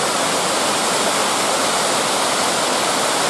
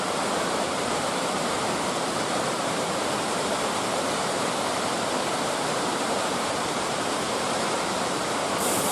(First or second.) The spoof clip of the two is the second